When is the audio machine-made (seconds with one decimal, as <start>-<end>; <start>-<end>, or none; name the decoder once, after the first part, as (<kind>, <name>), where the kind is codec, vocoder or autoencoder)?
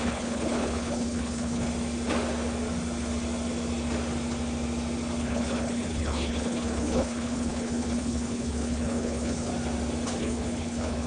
0.0-1.7 (codec, HILCodec); 5.2-9.5; 10.2-11.1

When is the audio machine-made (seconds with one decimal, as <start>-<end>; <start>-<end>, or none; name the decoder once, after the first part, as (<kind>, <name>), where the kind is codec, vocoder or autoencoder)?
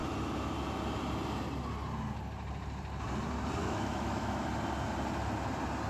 3.6-4.5 (autoencoder, DAC-VAE)